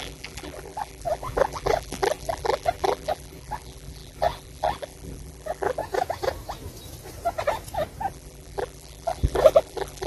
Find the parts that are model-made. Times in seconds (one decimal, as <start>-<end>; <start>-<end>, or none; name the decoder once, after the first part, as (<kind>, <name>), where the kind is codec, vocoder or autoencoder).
0.0-5.8 (vocoder, BigVGAN v2); 8.1-10.1